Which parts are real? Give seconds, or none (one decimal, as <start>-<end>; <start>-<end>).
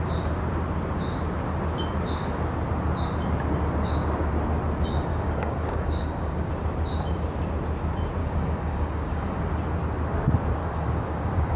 0.0-5.1; 6.5-8.2; 9.4-10.6